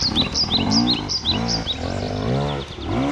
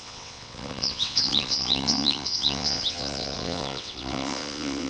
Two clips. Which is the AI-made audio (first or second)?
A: second